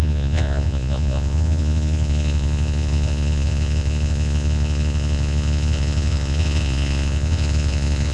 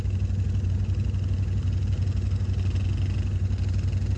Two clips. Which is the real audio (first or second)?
second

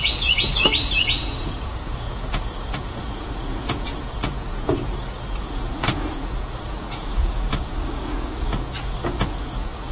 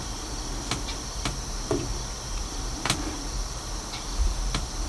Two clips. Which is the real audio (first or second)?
second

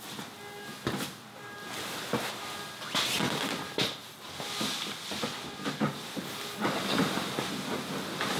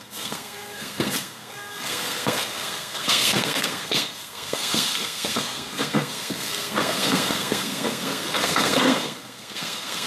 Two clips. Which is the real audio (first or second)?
first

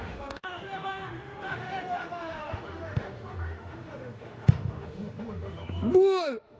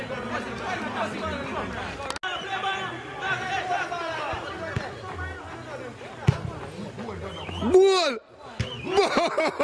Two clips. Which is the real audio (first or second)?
second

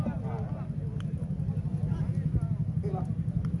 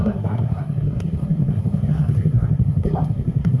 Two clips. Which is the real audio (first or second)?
first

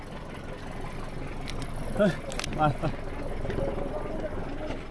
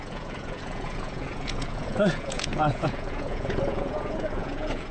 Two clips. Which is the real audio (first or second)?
first